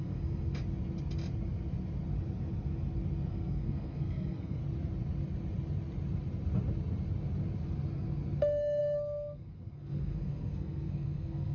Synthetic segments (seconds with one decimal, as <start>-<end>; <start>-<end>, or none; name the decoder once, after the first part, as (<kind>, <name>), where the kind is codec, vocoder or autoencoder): 0.0-0.6 (codec, SNAC); 3.3-4.6; 8.4-11.5